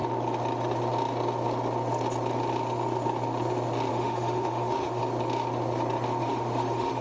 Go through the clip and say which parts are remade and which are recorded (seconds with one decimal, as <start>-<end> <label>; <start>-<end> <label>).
0.0-3.9 recorded; 3.9-5.0 remade; 5.0-6.2 recorded; 6.2-7.0 remade